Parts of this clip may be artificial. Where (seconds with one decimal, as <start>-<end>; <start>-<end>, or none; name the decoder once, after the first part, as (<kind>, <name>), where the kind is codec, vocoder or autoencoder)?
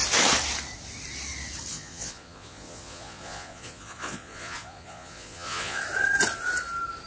1.7-5.8 (vocoder, Vocos)